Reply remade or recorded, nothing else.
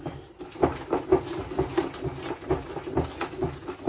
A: recorded